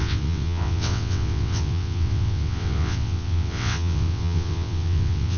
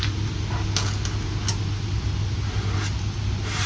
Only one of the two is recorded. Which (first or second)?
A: second